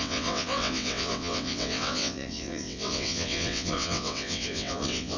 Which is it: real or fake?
fake